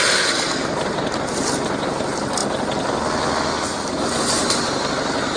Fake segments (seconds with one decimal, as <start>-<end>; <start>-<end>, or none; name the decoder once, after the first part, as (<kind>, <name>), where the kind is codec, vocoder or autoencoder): 0.6-1.4 (vocoder, BigVGAN v2); 4.4-4.9